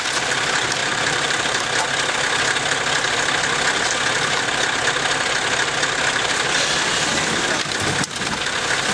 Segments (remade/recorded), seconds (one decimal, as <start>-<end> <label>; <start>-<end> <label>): 0.0-0.8 recorded; 0.8-1.6 remade; 1.6-8.9 recorded